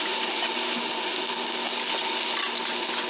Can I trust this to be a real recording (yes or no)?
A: yes